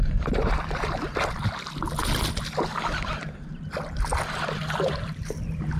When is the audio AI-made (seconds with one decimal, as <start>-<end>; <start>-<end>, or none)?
0.0-1.1; 4.6-5.8